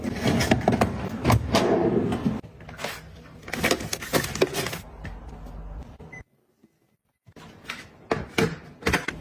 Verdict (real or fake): real